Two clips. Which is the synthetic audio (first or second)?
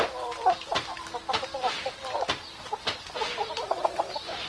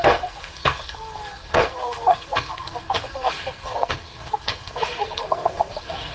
second